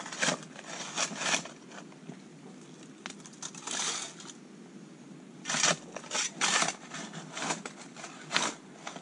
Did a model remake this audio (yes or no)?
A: no